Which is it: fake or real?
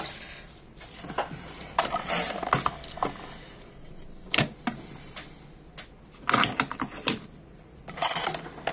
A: real